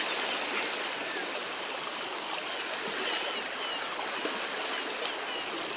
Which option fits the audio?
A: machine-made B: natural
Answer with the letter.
B